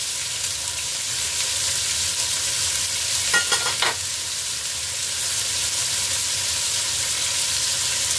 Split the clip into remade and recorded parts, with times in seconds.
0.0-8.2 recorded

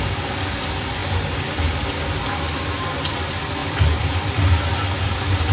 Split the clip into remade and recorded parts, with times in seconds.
0.0-5.5 recorded

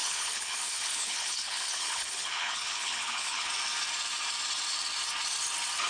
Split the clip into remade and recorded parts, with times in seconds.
0.0-3.5 remade; 3.5-5.9 recorded

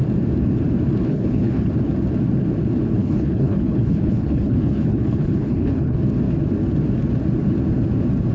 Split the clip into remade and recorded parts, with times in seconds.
0.0-1.1 recorded; 1.1-1.7 remade; 1.7-3.0 recorded; 3.0-6.0 remade; 6.0-8.3 recorded

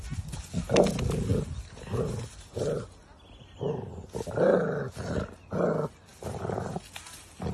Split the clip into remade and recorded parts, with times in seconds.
0.0-7.5 recorded